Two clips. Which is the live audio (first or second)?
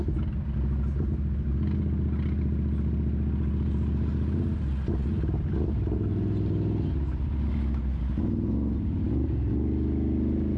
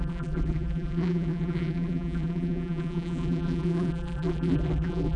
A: first